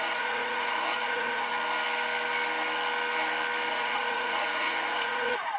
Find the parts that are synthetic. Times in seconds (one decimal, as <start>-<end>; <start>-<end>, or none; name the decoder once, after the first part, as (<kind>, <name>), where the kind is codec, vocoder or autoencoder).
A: 0.0-1.5 (vocoder, Vocos); 3.7-5.6